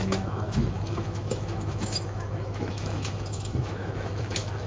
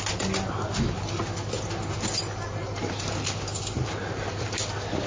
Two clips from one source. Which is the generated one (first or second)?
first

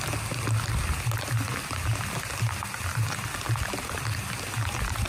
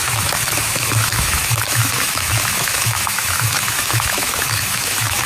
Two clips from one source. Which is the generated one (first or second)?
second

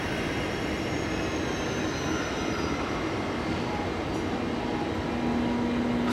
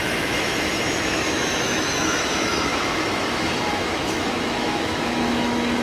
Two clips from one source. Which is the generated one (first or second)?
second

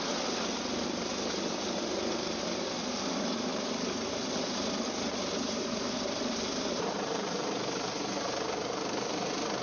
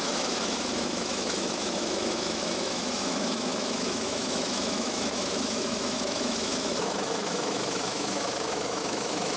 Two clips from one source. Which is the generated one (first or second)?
second